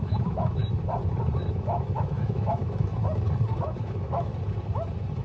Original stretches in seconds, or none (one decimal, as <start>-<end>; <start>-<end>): 0.6-1.5; 2.9-3.6; 4.3-5.2